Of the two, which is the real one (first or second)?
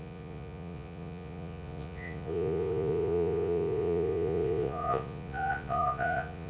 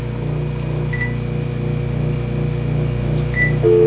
second